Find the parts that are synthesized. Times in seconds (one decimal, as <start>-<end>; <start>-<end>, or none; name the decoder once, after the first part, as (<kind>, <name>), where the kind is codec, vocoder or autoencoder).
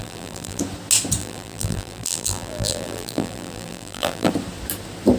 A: 0.0-0.6 (vocoder, BigVGAN v2); 1.2-4.3